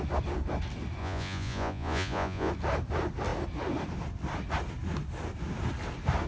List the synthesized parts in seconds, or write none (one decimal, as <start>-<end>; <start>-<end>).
1.0-2.5

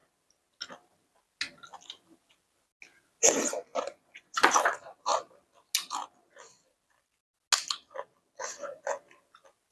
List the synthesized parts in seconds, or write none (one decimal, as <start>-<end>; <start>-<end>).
3.7-4.5

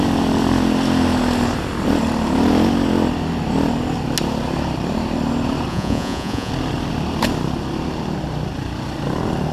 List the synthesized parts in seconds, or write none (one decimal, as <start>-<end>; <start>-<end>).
5.7-6.5

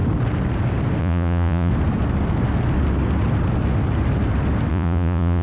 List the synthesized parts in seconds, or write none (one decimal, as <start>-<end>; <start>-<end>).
1.0-1.7; 4.7-5.4

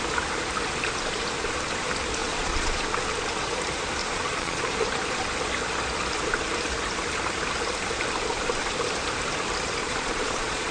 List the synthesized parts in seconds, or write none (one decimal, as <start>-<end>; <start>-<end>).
2.2-2.8; 4.0-4.6; 9.8-10.7

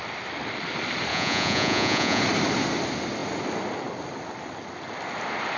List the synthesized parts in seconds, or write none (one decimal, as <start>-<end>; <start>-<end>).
1.1-2.2

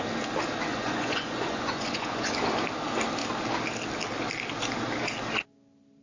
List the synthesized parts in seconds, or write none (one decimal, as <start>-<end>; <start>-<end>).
0.7-2.3